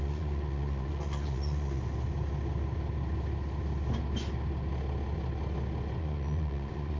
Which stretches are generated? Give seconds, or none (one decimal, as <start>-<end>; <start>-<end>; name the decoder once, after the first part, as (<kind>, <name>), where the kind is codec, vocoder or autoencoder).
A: 0.0-1.8 (vocoder, Vocos); 6.0-7.0